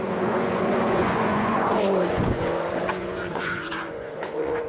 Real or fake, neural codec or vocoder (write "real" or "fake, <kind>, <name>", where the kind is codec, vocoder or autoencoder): fake, vocoder, Vocos